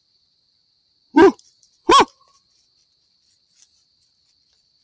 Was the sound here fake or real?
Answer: fake